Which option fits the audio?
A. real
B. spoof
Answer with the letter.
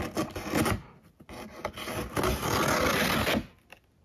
A